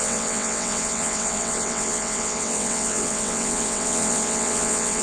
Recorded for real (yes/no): no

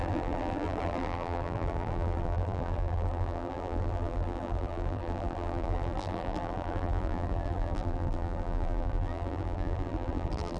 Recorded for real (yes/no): no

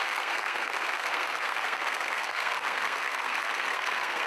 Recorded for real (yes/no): no